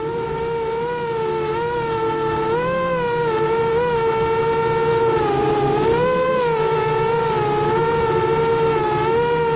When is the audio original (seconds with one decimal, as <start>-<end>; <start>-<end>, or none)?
0.0-9.6